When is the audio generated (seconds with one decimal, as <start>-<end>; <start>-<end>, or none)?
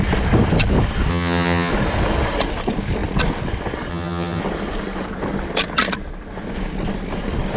1.1-1.7; 3.9-4.4